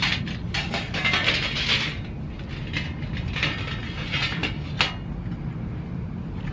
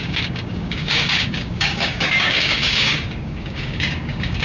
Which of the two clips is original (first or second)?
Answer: first